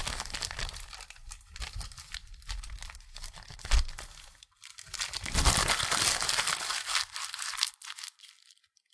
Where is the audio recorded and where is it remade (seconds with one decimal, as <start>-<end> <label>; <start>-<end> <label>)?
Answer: 0.0-8.9 recorded